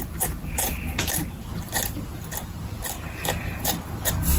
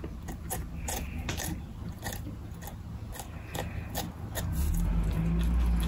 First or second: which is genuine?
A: second